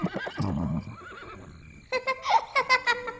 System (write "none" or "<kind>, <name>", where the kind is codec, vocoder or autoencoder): none